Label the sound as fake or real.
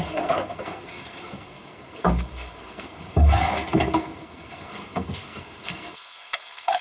fake